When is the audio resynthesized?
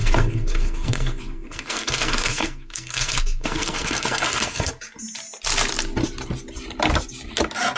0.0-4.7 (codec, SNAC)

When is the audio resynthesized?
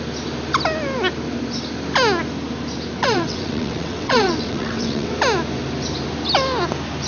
3.0-5.1 (vocoder, WaveNeXt)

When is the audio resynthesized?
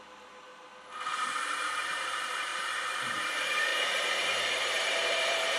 0.0-0.5 (vocoder, BigVGAN v2); 1.8-5.6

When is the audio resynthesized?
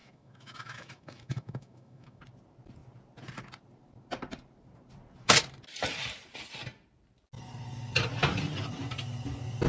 0.0-2.2 (autoencoder, DAC-VAE)